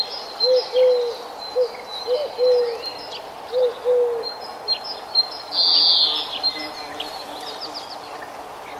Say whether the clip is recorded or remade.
recorded